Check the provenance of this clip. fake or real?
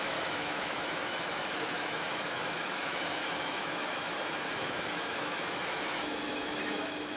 fake